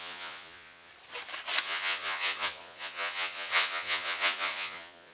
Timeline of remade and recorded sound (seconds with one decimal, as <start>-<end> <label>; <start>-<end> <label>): 0.0-0.9 remade; 0.9-1.6 recorded; 1.6-5.1 remade